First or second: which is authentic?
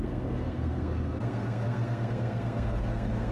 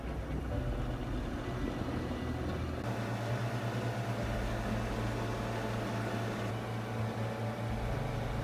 second